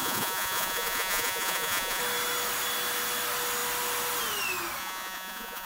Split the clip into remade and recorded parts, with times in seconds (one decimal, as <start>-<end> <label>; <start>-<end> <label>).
0.0-2.0 remade; 2.0-4.8 recorded; 4.8-5.7 remade